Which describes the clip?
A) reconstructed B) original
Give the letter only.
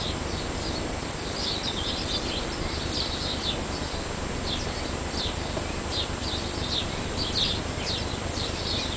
B